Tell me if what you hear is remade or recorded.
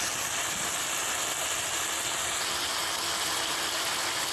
recorded